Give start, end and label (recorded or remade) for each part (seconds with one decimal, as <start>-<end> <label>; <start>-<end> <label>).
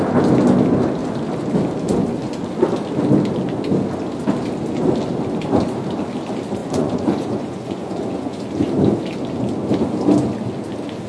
0.0-6.6 recorded; 6.6-8.4 remade; 8.4-11.1 recorded